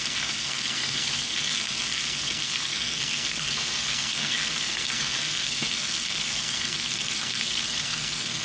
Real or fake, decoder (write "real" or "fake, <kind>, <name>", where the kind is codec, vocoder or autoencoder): fake, codec, SNAC